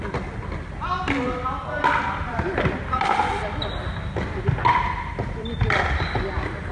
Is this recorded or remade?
recorded